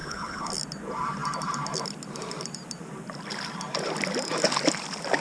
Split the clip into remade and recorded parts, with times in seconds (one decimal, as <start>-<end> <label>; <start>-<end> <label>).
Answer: 0.0-0.5 remade; 0.5-5.2 recorded